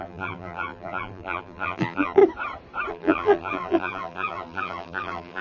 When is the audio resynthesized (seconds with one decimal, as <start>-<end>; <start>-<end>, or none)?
0.0-2.2; 2.9-5.4